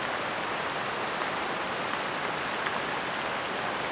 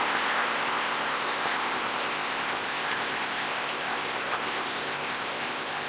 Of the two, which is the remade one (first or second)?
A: second